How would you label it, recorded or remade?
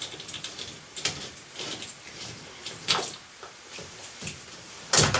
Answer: remade